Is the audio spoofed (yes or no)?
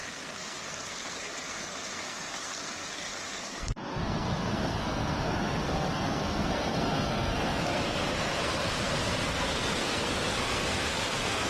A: yes